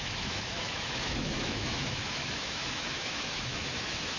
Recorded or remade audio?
remade